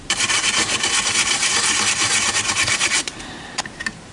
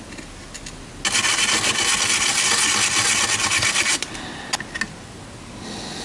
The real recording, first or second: second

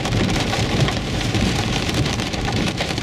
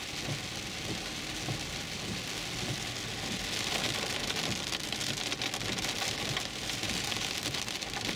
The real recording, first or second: second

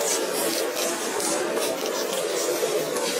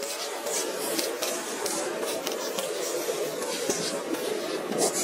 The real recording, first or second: first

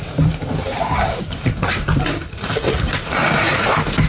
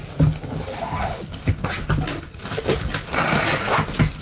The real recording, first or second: second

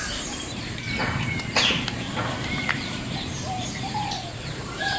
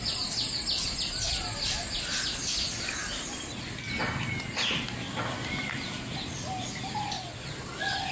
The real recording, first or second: second